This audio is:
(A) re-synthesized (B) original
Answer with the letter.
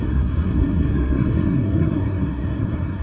A